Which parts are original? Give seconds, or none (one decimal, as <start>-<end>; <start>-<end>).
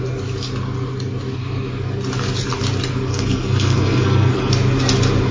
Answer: 0.0-3.1; 4.5-5.3